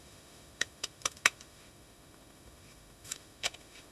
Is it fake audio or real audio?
fake